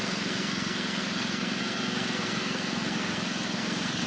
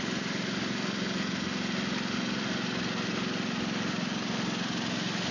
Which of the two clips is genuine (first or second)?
second